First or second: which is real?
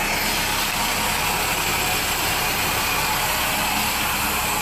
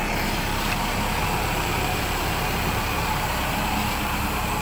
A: first